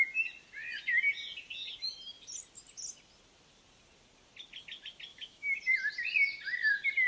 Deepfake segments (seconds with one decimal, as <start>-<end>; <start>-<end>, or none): 5.1-5.6

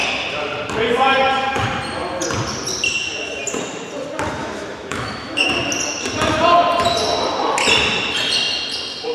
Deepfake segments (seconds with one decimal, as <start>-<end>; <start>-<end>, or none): 4.4-5.5

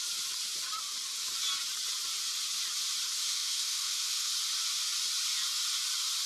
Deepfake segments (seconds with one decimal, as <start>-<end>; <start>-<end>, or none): 3.2-4.3

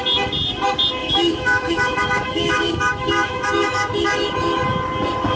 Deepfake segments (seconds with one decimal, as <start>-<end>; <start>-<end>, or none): 1.0-3.9

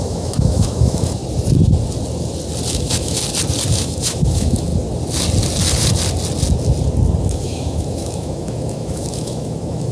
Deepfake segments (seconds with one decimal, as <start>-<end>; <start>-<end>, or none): 0.0-1.2; 2.7-3.2; 3.7-4.7; 7.2-9.9